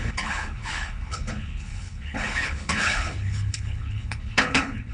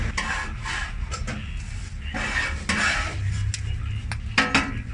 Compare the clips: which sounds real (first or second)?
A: second